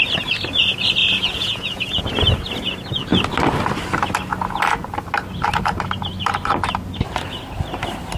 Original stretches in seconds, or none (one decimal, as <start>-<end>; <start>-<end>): 0.0-1.0; 2.0-8.2